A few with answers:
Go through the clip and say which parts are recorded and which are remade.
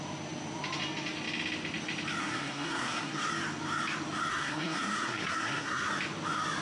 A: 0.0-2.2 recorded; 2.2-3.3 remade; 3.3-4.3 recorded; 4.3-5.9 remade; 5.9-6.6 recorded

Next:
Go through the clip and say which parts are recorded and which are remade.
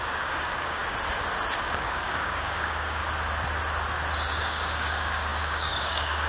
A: 0.0-0.8 remade; 0.8-1.6 recorded; 1.6-3.0 remade; 3.0-4.4 recorded; 4.4-6.3 remade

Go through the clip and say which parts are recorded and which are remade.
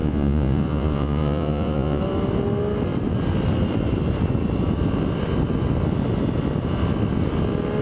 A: 0.0-2.0 remade; 2.0-7.8 recorded